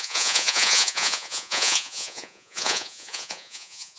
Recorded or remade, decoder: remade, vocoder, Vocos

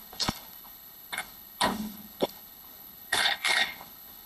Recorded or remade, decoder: remade, codec, HILCodec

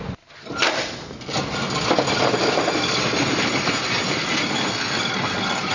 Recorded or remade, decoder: recorded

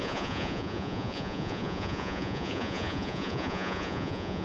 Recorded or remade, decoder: remade, vocoder, Vocos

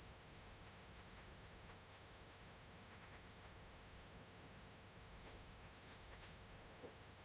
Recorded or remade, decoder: remade, autoencoder, DAC-VAE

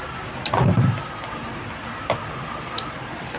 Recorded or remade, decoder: recorded